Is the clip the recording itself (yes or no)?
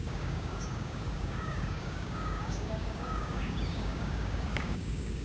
no